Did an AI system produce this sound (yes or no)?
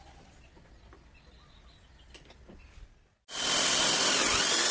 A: no